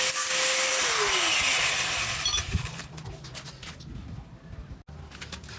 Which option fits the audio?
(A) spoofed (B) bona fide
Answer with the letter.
B